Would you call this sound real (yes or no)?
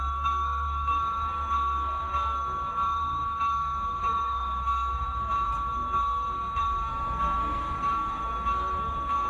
no